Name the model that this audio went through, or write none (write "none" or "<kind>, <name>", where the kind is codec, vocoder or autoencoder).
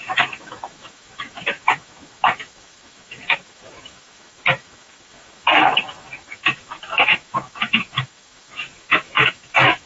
autoencoder, DAC-VAE